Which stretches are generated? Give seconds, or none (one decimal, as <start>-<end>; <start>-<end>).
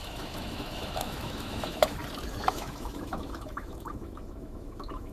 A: 0.0-2.0; 2.5-5.1